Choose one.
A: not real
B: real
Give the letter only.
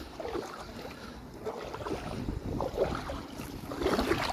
B